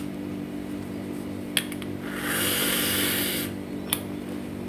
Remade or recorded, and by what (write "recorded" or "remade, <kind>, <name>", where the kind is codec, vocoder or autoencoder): recorded